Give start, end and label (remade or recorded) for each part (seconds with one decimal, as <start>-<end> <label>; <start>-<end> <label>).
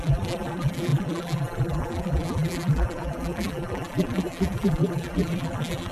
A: 0.0-5.9 remade